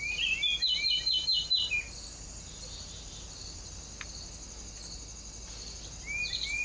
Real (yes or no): yes